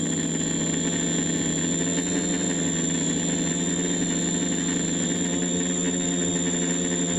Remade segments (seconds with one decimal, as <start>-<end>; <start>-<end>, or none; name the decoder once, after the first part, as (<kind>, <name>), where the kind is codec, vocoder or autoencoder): none